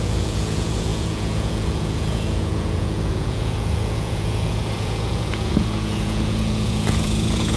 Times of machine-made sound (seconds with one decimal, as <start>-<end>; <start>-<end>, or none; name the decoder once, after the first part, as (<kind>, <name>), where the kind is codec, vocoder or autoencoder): 0.0-7.6 (vocoder, Vocos)